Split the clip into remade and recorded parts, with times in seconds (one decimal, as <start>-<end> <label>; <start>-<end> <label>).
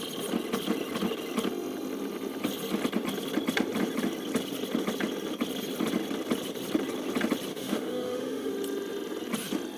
0.0-7.5 recorded; 7.5-8.5 remade; 8.5-9.8 recorded